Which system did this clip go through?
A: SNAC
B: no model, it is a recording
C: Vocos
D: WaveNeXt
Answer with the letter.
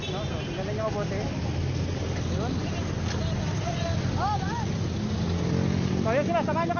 B